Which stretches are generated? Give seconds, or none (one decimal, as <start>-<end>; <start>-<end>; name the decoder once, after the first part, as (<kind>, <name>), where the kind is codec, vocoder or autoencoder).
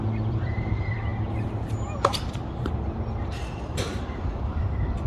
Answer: 0.0-1.1 (vocoder, BigVGAN v2); 3.7-5.1